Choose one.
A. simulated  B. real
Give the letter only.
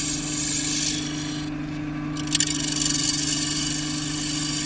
B